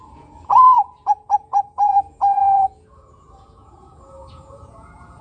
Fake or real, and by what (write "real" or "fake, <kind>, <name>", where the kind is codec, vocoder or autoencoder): fake, vocoder, Vocos